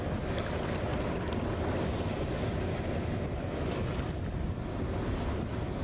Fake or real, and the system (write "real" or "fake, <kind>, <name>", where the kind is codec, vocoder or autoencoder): real